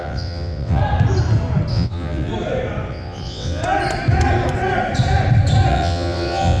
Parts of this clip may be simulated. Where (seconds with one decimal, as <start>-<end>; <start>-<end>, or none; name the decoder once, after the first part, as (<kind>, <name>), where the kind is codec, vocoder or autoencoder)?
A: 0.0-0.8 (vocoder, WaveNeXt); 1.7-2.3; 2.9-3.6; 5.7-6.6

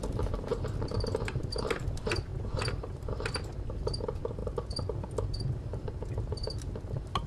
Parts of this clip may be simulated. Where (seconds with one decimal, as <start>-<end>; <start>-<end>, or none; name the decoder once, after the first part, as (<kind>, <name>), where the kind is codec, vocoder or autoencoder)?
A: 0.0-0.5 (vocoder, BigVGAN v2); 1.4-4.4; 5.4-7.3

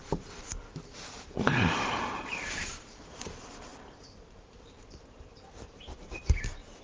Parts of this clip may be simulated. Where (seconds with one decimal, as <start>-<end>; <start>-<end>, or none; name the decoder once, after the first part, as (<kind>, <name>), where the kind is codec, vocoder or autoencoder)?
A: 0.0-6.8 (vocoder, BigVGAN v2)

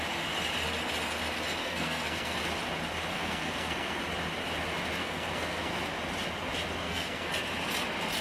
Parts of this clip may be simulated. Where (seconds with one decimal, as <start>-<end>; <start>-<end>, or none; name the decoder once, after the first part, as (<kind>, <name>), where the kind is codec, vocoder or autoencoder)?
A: 1.6-2.4 (codec, SNAC); 3.1-4.0; 5.0-5.7; 6.8-7.3

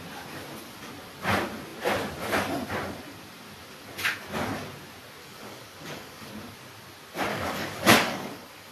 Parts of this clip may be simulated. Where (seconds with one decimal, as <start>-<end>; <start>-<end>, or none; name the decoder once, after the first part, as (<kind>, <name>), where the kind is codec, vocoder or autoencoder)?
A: 5.2-6.3 (codec, DAC); 7.3-8.7

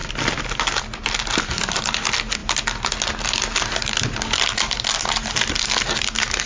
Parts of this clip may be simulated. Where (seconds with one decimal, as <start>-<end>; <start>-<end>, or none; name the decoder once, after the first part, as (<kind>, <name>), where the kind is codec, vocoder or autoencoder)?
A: none

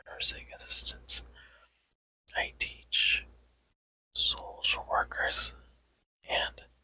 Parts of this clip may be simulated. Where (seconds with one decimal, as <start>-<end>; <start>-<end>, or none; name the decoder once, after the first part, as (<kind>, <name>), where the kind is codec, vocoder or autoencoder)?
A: 0.0-1.1 (vocoder, BigVGAN v2); 6.0-6.8

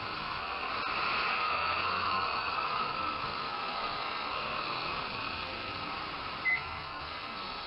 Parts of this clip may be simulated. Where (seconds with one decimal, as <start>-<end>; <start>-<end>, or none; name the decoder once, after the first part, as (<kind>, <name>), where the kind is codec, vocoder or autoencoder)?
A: 0.0-0.7 (codec, SNAC); 1.3-5.9; 6.5-7.7